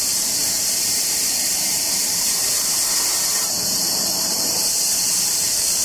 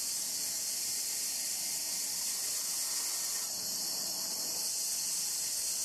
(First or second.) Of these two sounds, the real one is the second